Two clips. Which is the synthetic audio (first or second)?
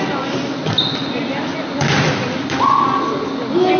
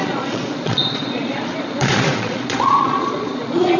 second